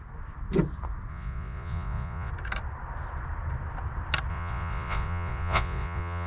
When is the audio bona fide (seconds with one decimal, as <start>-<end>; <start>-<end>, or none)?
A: 0.0-1.1; 2.3-4.3